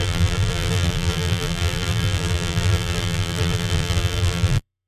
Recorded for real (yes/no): no